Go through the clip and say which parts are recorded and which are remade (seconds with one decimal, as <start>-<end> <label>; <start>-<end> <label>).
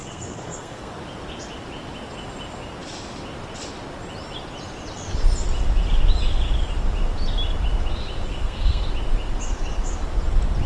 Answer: 0.0-0.9 remade; 0.9-8.3 recorded; 8.3-8.8 remade; 8.8-10.7 recorded